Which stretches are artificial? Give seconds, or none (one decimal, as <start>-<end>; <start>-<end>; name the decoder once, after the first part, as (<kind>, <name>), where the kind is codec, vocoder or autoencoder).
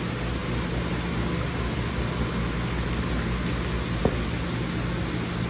none